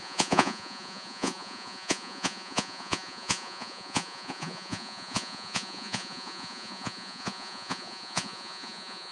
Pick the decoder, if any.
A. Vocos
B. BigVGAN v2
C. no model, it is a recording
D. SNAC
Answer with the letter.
A